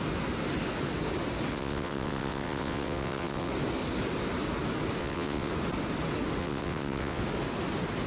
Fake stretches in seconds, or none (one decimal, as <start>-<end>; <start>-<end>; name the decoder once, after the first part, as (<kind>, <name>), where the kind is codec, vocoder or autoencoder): 1.5-3.5 (vocoder, WaveNeXt); 5.0-5.5; 6.4-7.2